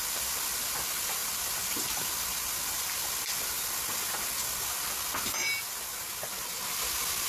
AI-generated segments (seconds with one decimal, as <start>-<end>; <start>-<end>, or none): 1.2-2.5